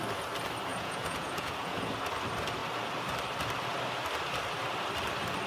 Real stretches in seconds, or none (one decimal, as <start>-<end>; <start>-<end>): 0.0-0.7; 1.9-5.5